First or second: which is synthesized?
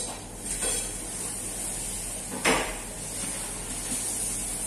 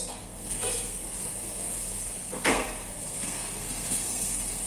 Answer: second